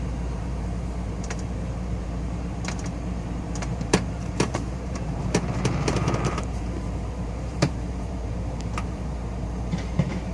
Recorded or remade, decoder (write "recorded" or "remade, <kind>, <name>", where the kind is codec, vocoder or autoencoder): remade, vocoder, BigVGAN v2